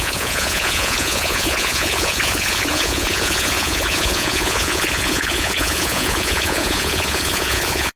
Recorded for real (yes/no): no